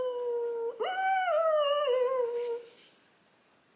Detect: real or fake real